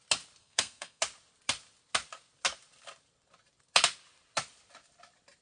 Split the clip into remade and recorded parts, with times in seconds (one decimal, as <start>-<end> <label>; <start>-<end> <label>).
0.0-0.4 recorded; 0.4-1.0 remade; 1.0-5.4 recorded